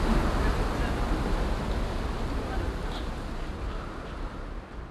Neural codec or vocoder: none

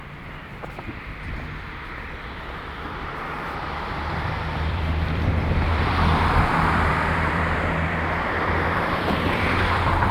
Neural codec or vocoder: vocoder, BigVGAN v2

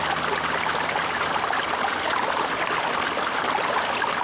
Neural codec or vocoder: none